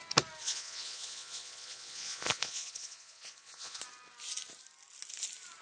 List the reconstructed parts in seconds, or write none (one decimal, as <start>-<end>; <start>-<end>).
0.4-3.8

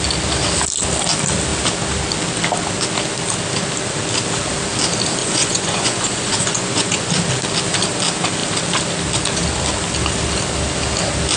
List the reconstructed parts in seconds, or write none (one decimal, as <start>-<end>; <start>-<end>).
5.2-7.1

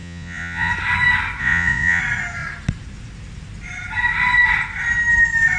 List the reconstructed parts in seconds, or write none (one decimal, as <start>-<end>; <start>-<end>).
0.0-0.7; 1.4-2.0